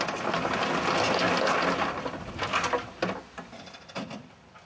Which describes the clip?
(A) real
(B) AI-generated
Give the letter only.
A